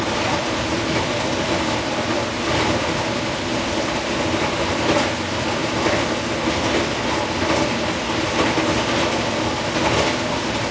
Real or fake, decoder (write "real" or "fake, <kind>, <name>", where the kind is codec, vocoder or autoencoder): real